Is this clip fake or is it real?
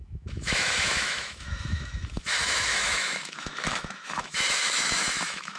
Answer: fake